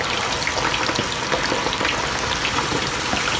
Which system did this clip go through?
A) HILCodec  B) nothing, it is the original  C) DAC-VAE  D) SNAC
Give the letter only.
B